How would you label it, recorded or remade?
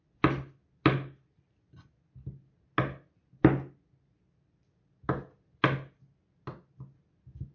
recorded